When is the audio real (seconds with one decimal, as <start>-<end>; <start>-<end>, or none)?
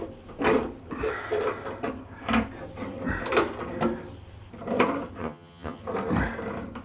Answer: 0.0-5.2; 5.8-6.8